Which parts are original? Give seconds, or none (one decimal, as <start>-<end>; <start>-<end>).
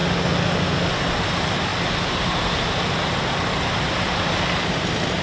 0.0-5.2